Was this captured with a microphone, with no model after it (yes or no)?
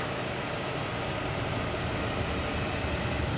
yes